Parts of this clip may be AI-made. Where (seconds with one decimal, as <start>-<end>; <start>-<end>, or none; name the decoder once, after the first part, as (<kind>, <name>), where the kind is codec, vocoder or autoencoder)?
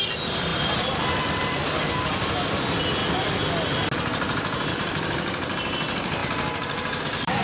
0.0-0.5 (vocoder, BigVGAN v2); 1.2-3.0; 4.7-6.2; 7.0-7.4